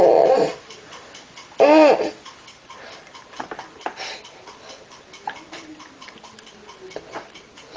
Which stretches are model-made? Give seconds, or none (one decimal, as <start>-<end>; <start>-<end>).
none